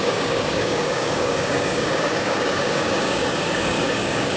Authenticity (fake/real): fake